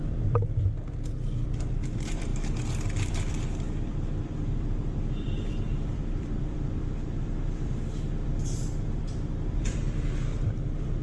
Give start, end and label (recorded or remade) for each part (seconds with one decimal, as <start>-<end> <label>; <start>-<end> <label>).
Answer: 0.0-11.0 remade